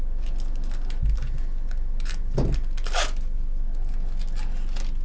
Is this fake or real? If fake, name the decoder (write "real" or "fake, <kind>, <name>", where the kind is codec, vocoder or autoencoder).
real